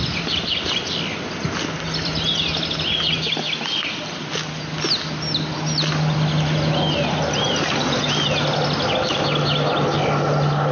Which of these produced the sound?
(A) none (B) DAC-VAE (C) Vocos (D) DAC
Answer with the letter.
A